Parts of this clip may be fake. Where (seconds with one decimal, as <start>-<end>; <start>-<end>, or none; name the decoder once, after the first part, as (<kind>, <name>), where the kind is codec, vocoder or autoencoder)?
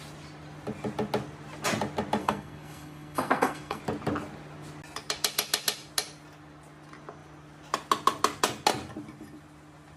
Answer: 2.2-3.8 (codec, SNAC)